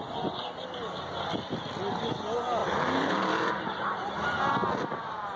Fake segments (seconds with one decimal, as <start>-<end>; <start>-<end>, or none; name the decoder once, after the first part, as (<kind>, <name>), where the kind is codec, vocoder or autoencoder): 2.6-3.5 (vocoder, BigVGAN v2)